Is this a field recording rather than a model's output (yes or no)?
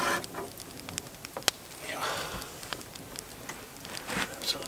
yes